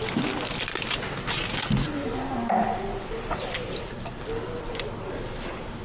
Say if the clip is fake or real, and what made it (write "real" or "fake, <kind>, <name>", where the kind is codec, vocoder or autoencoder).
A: real